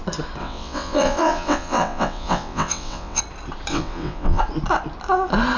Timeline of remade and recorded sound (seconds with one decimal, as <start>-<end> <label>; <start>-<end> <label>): 0.0-0.4 recorded; 0.4-3.2 remade; 3.2-3.7 recorded; 3.7-4.4 remade; 4.4-5.6 recorded